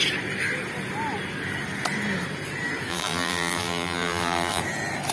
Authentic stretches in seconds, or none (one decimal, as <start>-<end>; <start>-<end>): 0.0-2.9; 4.6-5.1